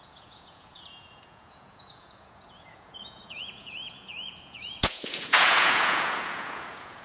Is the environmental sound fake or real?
fake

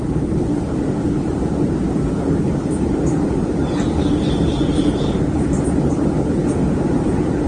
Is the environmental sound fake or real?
real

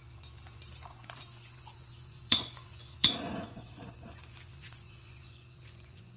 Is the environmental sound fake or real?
fake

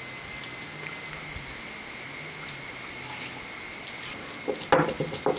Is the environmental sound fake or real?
real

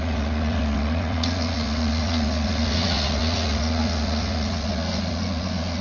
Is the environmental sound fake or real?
fake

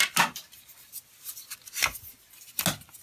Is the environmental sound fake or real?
real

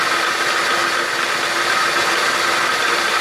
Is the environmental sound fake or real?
real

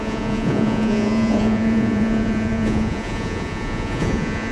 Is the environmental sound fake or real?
fake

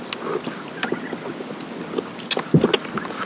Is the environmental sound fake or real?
real